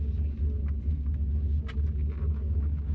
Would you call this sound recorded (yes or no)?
yes